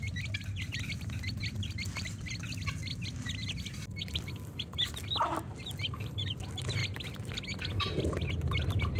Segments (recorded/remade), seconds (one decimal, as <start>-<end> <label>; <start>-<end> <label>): 0.0-9.0 remade